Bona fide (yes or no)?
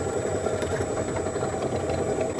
yes